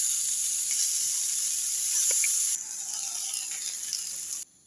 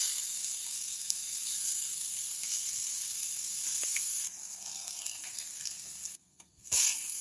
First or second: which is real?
first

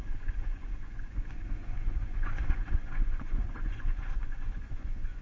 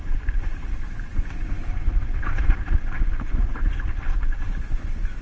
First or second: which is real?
second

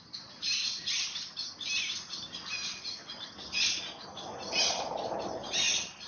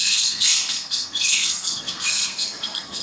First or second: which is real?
first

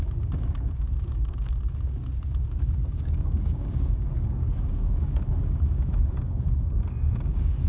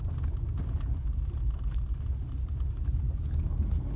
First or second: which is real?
second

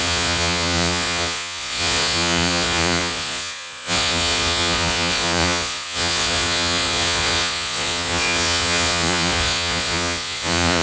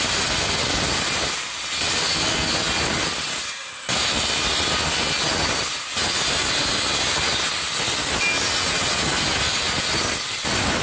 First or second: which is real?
second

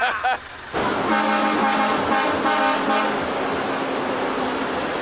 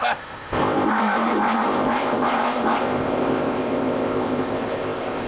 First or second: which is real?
first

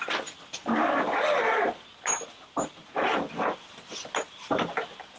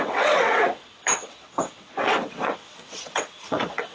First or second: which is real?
first